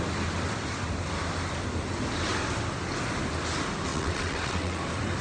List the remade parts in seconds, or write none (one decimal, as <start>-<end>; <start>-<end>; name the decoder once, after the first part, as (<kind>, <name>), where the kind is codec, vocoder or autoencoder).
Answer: 3.9-4.8 (vocoder, WaveNeXt)